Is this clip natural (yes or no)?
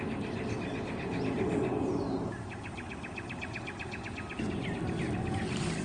yes